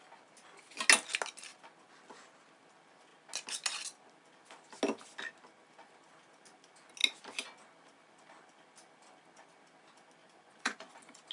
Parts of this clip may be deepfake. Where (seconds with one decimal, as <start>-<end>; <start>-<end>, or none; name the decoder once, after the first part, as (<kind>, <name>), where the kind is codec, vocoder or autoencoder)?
10.2-10.9 (vocoder, Vocos)